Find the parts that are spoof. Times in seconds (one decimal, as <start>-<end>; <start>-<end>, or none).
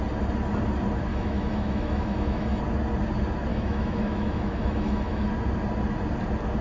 1.1-2.6; 3.5-5.3